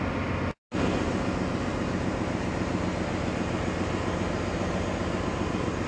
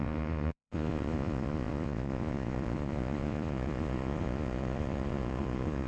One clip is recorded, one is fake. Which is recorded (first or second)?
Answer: first